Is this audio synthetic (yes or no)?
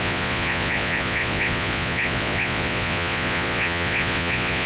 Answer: yes